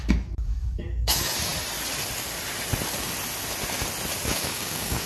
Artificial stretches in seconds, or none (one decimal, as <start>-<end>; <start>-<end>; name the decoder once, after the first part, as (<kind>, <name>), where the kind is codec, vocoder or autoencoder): 0.0-1.5 (codec, DAC); 4.2-5.1